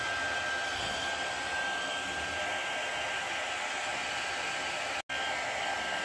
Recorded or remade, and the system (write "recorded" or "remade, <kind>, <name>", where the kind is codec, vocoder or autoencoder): recorded